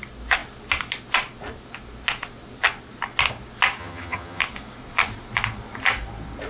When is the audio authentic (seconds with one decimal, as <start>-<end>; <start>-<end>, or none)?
0.0-3.8; 4.4-6.5